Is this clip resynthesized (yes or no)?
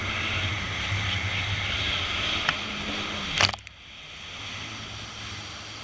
no